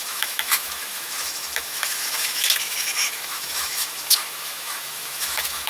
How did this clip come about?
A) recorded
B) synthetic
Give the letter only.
B